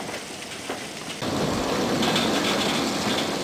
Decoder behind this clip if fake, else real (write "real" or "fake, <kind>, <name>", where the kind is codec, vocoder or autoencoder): real